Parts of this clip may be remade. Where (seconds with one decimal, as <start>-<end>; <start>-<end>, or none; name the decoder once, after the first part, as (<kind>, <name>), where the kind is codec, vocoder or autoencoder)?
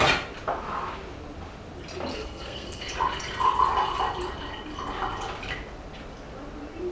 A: 2.1-2.8 (codec, SNAC)